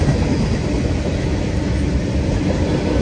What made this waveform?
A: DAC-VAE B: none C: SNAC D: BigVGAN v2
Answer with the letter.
B